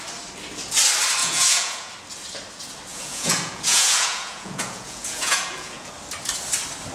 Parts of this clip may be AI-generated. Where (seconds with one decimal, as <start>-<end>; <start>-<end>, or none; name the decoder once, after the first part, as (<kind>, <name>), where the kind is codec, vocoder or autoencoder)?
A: 1.2-1.9 (vocoder, Vocos); 2.9-5.9